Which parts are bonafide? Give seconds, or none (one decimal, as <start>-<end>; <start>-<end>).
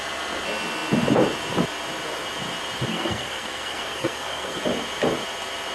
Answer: 0.0-2.9; 4.6-5.7